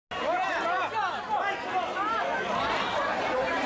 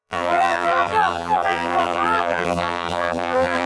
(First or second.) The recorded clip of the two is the first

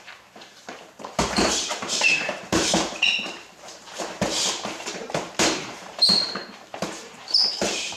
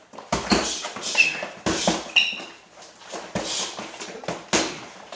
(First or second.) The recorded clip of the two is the second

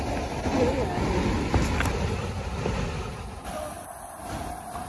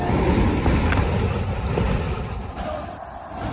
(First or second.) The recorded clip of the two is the first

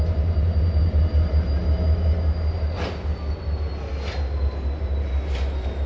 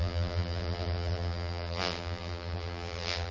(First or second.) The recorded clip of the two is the first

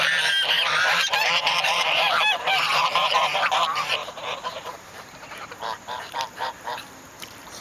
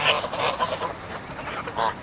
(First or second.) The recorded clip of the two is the second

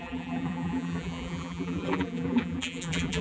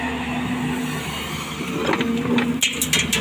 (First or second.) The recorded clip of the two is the second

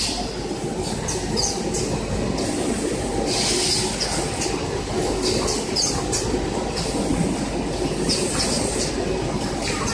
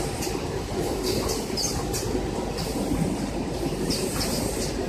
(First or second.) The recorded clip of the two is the first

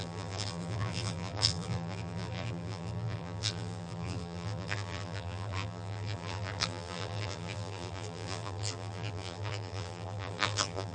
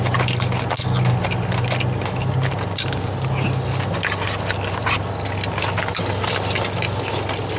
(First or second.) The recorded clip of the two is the second